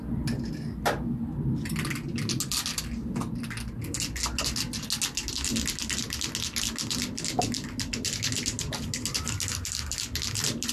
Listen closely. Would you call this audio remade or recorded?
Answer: recorded